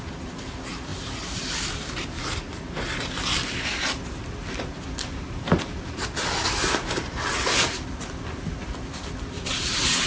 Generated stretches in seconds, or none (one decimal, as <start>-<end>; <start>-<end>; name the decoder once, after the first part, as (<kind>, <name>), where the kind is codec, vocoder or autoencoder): none

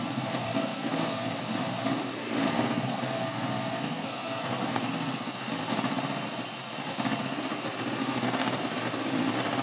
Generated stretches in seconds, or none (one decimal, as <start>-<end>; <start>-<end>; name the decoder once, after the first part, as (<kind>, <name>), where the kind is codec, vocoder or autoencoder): 0.4-1.3 (codec, SNAC); 2.2-5.5; 8.0-8.6